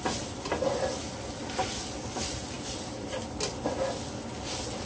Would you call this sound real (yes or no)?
yes